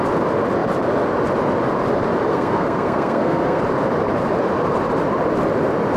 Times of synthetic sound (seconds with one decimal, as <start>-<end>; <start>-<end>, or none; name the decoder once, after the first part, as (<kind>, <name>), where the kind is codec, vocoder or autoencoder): 2.3-3.6 (codec, SNAC)